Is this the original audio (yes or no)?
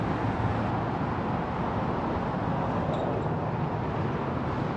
yes